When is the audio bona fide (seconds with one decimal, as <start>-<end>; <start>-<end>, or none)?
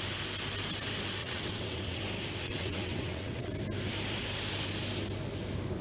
0.0-1.2; 2.0-2.4; 3.5-5.8